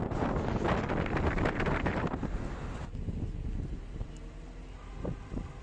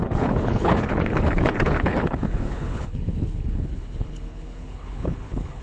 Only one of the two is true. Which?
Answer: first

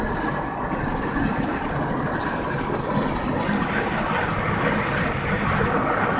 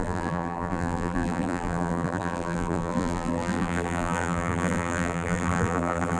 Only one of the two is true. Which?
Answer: first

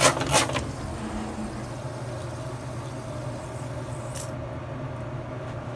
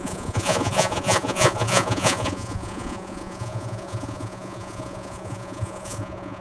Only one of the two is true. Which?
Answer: first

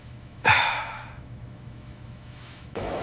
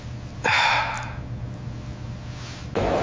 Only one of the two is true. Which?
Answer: second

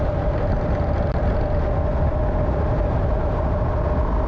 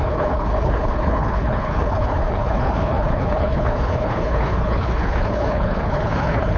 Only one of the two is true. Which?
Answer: first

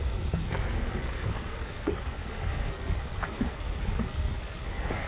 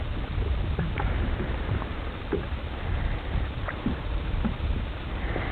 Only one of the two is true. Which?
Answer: second